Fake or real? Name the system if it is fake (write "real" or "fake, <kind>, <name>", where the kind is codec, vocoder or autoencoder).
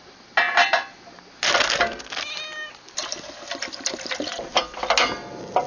real